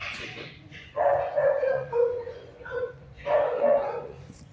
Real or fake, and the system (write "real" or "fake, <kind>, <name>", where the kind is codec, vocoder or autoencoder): fake, vocoder, Vocos